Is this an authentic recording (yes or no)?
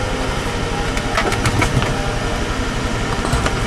yes